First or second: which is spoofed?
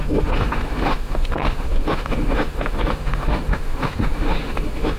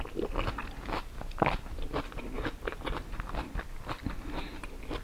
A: first